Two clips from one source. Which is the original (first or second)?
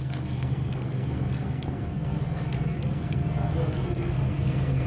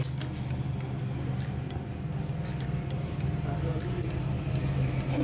second